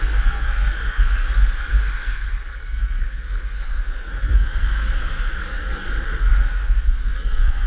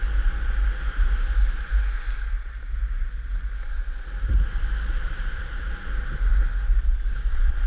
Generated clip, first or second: first